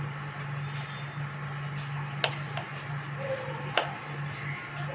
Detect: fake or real real